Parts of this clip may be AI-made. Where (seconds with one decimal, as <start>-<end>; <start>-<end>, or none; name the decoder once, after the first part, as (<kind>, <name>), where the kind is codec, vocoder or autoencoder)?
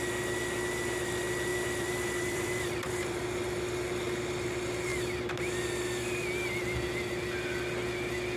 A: 1.5-3.2 (vocoder, BigVGAN v2)